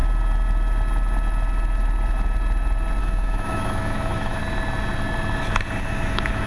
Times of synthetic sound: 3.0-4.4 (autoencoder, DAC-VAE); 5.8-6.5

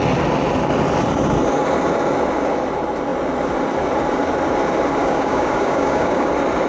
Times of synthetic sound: 5.0-6.3 (codec, DAC)

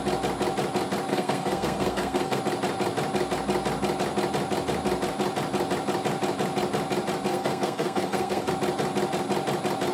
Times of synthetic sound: 1.1-2.4 (codec, SNAC); 7.3-8.5

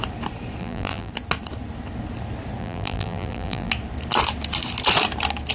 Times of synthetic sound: 0.6-1.1 (vocoder, BigVGAN v2); 2.6-3.7